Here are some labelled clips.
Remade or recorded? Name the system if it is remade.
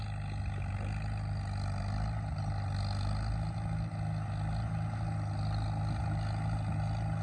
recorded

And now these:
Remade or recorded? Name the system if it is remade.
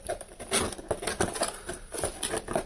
recorded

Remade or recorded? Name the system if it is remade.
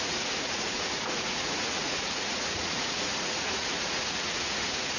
remade, vocoder, Vocos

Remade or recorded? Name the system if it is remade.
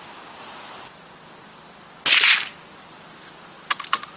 recorded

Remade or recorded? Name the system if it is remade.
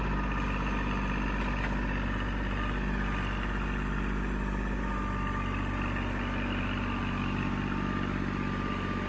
recorded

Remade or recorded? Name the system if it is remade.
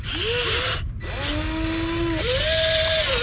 recorded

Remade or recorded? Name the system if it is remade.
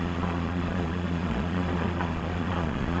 remade, vocoder, Vocos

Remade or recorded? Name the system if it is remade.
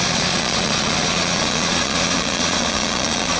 remade, vocoder, Vocos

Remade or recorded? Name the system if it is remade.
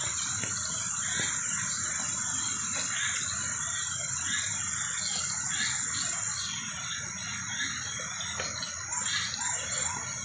recorded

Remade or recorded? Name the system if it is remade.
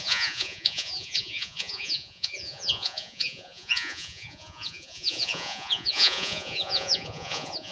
remade, vocoder, Vocos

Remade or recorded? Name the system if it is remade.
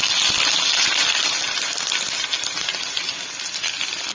recorded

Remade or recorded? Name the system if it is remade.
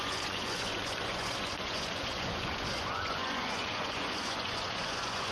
remade, vocoder, Vocos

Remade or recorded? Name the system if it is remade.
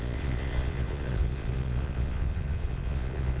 remade, vocoder, Vocos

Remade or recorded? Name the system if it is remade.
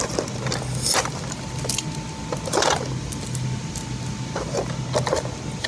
recorded